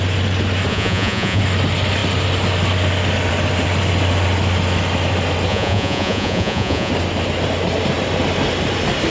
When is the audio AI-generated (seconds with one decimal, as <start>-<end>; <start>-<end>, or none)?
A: 0.7-1.4; 5.5-6.9